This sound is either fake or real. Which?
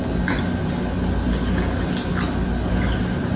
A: real